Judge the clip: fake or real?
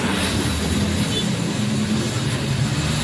real